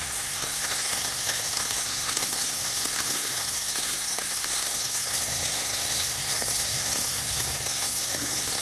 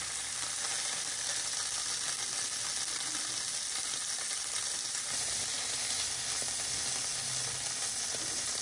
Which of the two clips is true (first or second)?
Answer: second